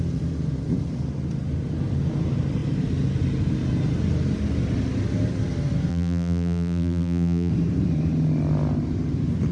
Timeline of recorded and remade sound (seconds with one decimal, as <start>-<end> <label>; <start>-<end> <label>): 0.0-5.9 recorded; 5.9-7.5 remade; 7.5-9.5 recorded